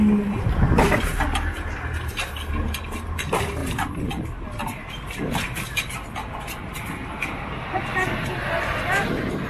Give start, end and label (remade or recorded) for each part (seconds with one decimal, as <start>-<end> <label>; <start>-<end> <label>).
0.0-9.5 recorded